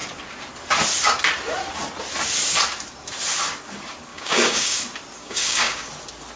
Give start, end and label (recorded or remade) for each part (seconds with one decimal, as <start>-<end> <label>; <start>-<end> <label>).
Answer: 0.0-4.1 recorded; 4.1-4.8 remade; 4.8-5.2 recorded; 5.2-5.9 remade; 5.9-6.4 recorded